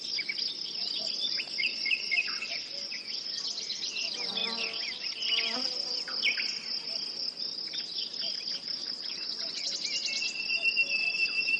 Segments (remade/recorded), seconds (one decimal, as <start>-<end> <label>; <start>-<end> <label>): 0.0-0.8 recorded; 0.8-3.4 remade; 3.4-8.8 recorded; 8.8-9.7 remade; 9.7-11.6 recorded